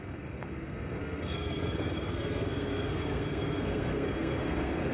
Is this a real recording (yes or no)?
no